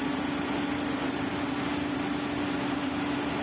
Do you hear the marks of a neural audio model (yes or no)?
no